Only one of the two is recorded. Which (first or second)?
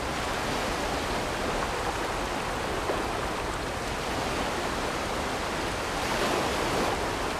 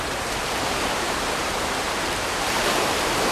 first